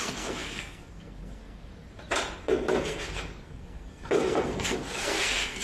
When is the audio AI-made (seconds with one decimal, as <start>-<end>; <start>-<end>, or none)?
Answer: 0.0-1.7; 2.4-5.6